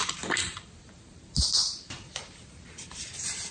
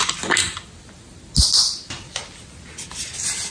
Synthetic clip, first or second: first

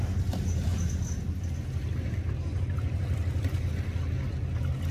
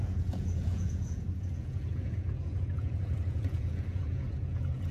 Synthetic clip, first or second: second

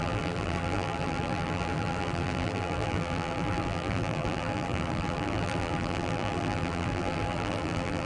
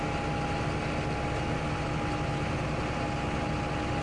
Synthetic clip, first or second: first